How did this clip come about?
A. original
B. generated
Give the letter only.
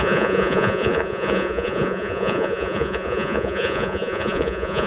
B